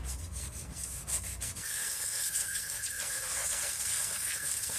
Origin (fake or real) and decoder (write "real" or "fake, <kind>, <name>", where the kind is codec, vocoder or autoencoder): fake, codec, SNAC